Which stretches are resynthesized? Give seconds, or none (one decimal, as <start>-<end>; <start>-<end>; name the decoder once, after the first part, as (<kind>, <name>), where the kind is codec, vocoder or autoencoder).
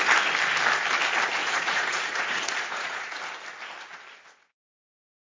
1.4-3.2 (vocoder, Vocos)